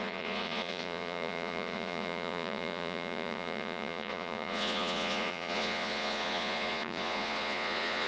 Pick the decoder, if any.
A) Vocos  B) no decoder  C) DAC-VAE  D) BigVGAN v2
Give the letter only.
A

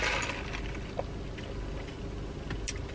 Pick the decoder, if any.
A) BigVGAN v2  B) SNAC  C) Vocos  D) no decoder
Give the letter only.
D